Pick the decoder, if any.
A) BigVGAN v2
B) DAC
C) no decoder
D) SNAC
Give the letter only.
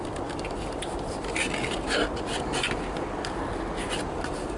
C